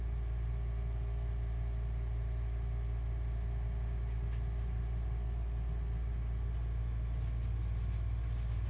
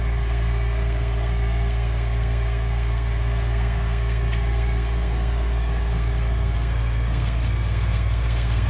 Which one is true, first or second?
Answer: first